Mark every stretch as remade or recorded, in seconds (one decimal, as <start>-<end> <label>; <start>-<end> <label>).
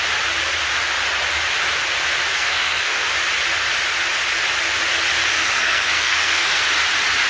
0.0-2.3 recorded; 2.3-3.1 remade; 3.1-5.3 recorded; 5.3-6.6 remade; 6.6-7.3 recorded